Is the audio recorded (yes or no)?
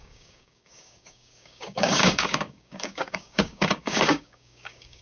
no